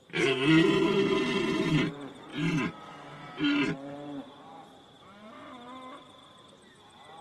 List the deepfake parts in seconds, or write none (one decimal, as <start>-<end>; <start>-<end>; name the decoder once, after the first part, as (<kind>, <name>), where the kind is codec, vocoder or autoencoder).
0.0-7.2 (vocoder, BigVGAN v2)